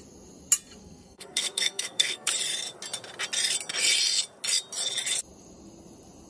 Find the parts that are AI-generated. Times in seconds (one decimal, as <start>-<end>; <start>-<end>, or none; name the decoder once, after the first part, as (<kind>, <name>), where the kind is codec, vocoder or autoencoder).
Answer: 0.8-2.3 (codec, SNAC)